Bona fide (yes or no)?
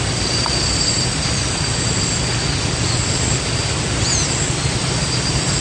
yes